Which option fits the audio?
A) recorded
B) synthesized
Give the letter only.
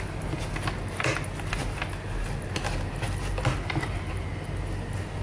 A